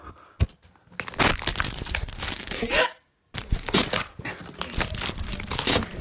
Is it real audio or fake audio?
real